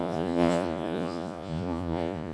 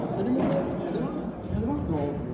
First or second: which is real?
second